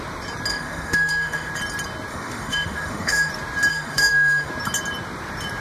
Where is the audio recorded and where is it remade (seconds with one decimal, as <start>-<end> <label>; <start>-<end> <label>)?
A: 0.0-0.5 recorded; 0.5-1.5 remade; 1.5-2.1 recorded; 2.1-3.3 remade; 3.3-3.7 recorded; 3.7-4.5 remade; 4.5-5.6 recorded